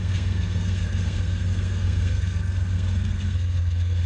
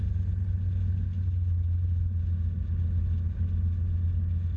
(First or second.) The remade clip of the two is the first